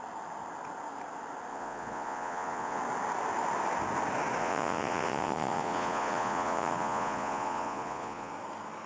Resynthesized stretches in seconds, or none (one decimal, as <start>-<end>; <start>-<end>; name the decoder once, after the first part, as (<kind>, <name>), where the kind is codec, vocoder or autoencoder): 1.5-2.8 (vocoder, Vocos); 4.4-8.3